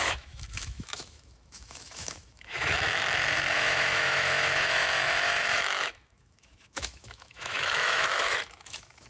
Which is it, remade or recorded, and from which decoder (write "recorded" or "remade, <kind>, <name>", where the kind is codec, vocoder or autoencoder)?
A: remade, autoencoder, DAC-VAE